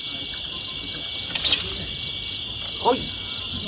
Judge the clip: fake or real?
real